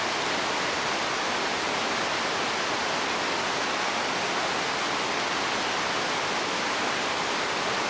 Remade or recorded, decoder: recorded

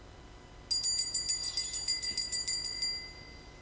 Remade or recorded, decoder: recorded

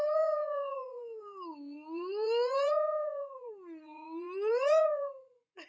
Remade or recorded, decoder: remade, vocoder, Vocos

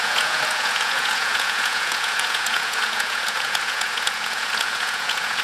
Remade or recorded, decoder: remade, vocoder, Vocos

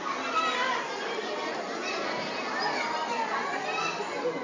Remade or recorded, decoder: recorded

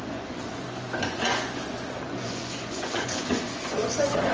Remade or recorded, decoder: remade, vocoder, Vocos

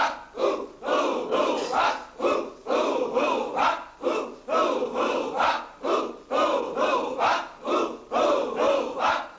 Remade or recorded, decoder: recorded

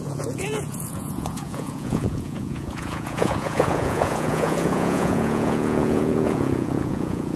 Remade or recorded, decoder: remade, vocoder, Vocos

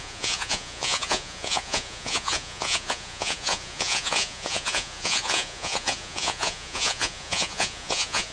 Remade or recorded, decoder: remade, vocoder, Vocos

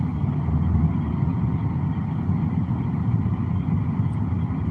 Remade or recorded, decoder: recorded